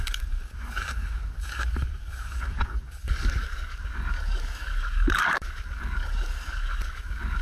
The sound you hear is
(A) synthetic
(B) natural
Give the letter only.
A